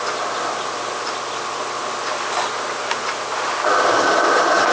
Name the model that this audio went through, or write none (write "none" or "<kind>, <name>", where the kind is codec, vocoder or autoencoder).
none